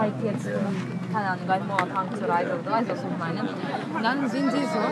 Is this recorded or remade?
recorded